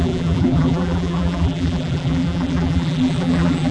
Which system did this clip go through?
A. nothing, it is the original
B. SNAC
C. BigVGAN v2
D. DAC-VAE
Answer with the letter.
C